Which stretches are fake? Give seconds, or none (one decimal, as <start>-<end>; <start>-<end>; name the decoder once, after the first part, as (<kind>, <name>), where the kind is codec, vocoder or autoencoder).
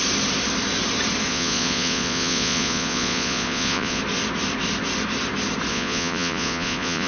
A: 1.3-4.0 (vocoder, Vocos); 5.7-7.1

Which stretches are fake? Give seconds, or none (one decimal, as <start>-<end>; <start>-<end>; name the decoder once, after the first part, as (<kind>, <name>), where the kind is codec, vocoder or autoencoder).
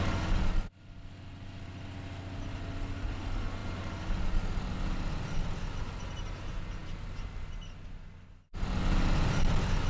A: none